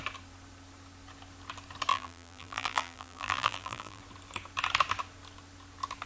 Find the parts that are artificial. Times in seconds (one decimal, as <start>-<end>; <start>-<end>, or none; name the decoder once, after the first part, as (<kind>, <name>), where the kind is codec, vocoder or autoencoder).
1.9-4.0 (vocoder, BigVGAN v2)